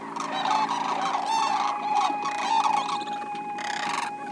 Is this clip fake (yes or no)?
no